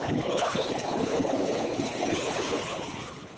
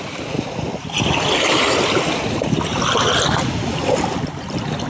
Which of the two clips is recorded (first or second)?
second